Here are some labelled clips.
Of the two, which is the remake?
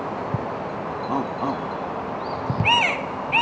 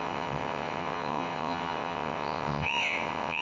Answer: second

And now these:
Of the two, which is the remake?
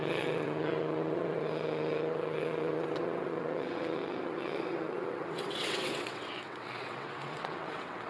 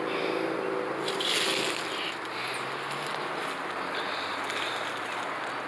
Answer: first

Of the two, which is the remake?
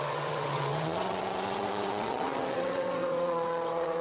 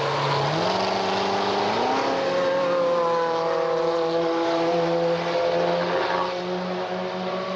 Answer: first